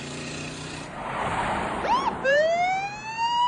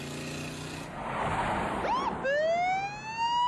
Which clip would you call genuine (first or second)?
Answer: second